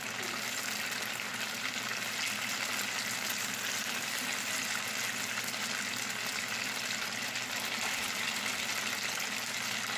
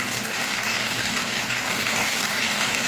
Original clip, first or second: first